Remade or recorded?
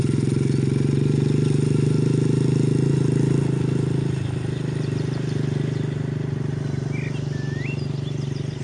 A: recorded